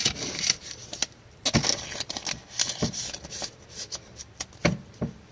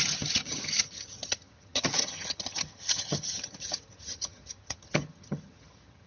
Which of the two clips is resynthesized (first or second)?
second